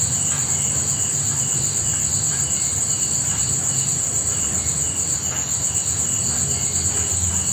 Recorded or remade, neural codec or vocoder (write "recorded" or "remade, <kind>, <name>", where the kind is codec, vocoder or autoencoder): recorded